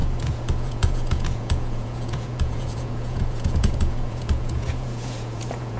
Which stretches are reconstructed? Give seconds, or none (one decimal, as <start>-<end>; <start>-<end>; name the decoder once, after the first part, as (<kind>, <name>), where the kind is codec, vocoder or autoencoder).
0.0-5.8 (vocoder, Vocos)